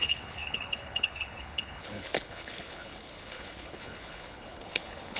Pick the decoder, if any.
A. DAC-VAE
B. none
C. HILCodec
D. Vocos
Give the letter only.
C